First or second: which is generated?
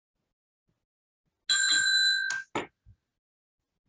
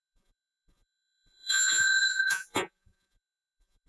second